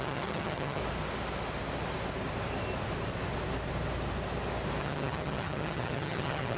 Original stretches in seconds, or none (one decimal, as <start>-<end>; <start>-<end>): 0.8-4.8